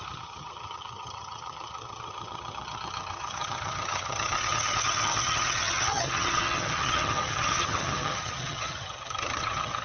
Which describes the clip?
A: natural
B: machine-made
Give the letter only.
B